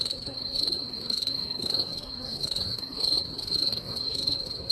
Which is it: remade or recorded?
remade